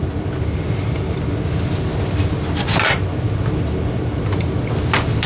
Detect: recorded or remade recorded